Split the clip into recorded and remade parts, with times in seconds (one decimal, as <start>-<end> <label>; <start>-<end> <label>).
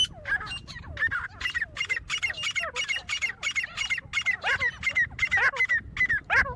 0.0-6.6 recorded